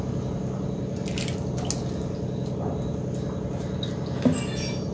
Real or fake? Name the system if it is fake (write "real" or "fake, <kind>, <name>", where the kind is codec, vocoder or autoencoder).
real